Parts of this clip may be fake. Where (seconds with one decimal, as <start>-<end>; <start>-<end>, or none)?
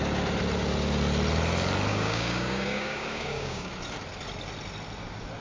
1.9-3.7